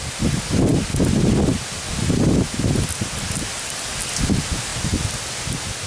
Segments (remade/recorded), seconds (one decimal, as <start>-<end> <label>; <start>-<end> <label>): 0.0-5.9 recorded